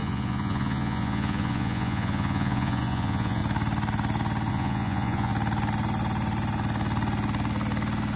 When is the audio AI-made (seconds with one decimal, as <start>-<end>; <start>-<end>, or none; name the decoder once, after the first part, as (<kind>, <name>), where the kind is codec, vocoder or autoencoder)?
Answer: 0.0-3.4 (vocoder, Vocos); 4.5-5.3